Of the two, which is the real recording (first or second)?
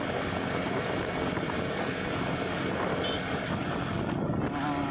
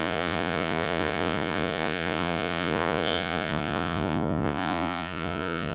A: first